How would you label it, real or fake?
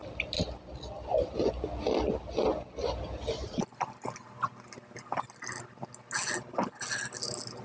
real